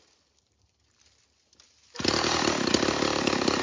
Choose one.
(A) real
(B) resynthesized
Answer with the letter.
A